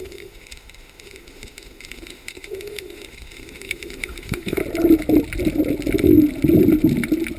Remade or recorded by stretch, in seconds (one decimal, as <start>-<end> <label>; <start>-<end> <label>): 0.0-4.6 remade; 4.6-7.4 recorded